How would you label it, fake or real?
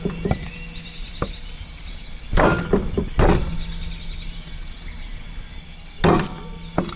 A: real